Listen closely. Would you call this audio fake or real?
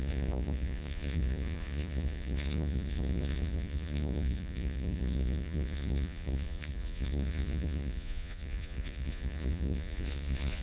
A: fake